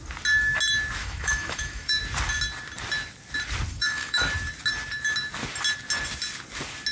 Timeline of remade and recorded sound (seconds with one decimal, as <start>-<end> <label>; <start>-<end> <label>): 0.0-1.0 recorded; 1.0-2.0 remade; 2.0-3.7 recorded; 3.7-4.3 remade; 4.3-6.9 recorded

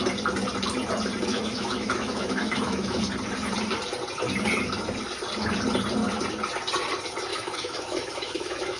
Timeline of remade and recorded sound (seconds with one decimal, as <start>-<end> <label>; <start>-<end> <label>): 0.0-1.3 recorded; 1.3-3.0 remade; 3.0-7.3 recorded; 7.3-8.8 remade

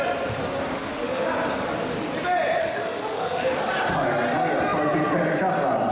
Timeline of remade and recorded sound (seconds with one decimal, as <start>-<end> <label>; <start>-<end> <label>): 0.0-0.7 recorded; 0.7-1.3 remade; 1.3-2.6 recorded; 2.6-3.6 remade; 3.6-5.9 recorded

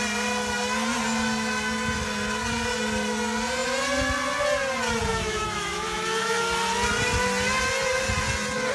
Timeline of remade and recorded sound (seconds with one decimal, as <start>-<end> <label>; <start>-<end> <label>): 0.0-5.1 recorded; 5.1-6.4 remade; 6.4-8.7 recorded